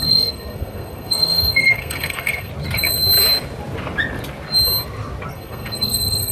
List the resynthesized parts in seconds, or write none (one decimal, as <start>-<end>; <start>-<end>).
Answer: 0.0-2.5; 5.3-6.3